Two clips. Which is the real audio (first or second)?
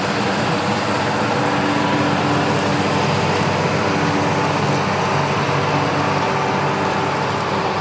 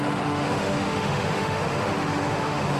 first